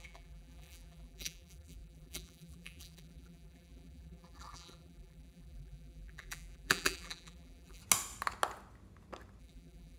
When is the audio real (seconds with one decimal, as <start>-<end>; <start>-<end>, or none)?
7.8-9.4